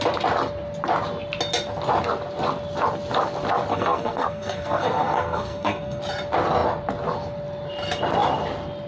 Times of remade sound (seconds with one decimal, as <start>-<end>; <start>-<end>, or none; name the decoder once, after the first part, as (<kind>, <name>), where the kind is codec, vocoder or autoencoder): 3.7-6.0 (codec, SNAC)